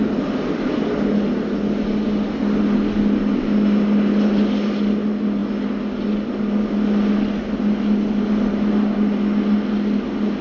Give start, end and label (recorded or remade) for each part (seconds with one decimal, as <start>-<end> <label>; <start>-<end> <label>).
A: 0.0-10.4 recorded